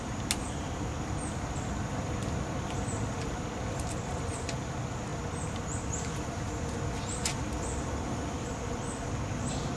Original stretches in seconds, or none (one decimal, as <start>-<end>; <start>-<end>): 0.0-9.8